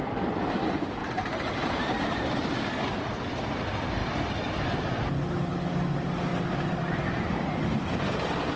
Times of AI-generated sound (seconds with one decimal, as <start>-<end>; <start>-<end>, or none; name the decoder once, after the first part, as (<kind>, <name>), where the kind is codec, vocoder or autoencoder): 1.0-2.6 (vocoder, BigVGAN v2); 6.3-8.6